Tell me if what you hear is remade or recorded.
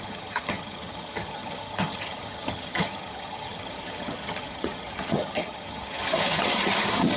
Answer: remade